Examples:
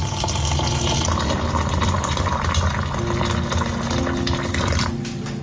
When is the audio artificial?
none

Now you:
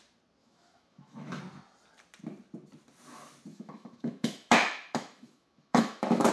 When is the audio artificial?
0.4-1.4 (autoencoder, DAC-VAE); 3.5-6.3